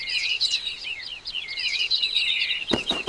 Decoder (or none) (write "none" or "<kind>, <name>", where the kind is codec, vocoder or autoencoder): vocoder, WaveNeXt